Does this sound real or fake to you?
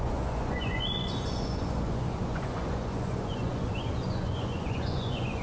fake